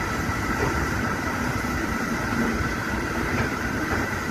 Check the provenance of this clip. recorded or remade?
remade